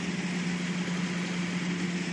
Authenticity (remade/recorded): recorded